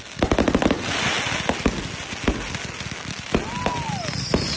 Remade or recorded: recorded